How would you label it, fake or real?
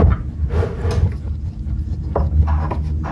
real